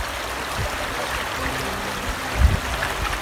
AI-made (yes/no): no